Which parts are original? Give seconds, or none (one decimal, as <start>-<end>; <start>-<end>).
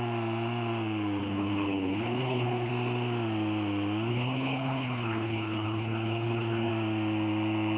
0.0-1.2; 2.7-4.1; 6.7-7.8